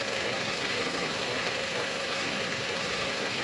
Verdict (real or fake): fake